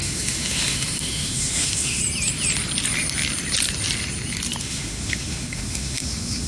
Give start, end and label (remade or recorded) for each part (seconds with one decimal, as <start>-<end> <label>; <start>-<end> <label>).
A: 0.0-2.0 remade; 2.0-4.6 recorded; 4.6-6.5 remade